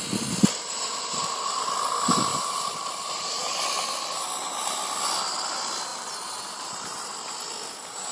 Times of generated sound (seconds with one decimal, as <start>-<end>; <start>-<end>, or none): 2.3-3.6; 5.9-7.1